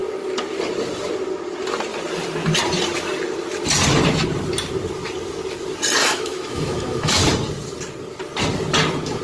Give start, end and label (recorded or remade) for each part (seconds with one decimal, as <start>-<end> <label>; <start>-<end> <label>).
0.0-6.0 recorded; 6.0-7.2 remade; 7.2-9.2 recorded